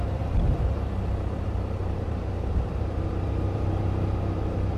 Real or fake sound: fake